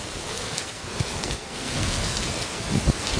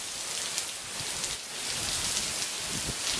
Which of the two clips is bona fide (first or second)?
second